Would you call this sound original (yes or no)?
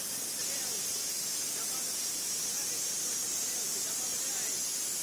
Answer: yes